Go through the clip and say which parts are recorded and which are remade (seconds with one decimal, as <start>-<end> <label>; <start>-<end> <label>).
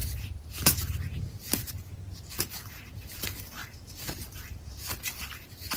0.0-0.5 remade; 0.5-1.6 recorded; 1.6-3.2 remade; 3.2-3.6 recorded; 3.6-4.9 remade; 4.9-5.8 recorded